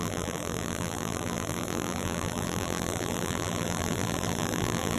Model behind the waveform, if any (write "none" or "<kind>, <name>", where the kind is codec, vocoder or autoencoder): vocoder, BigVGAN v2